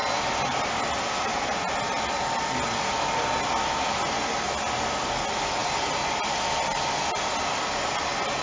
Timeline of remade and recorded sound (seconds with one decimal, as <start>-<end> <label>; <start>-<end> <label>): 0.0-8.4 recorded